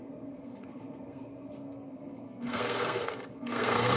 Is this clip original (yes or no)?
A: no